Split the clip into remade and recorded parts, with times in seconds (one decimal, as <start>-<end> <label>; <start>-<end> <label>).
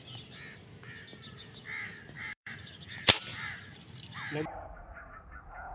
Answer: 0.0-2.2 recorded; 2.2-3.5 remade; 3.5-5.7 recorded